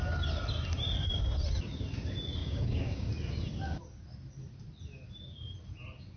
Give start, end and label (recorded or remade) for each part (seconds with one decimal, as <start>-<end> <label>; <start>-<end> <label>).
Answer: 0.0-2.4 recorded; 2.4-3.1 remade; 3.1-6.2 recorded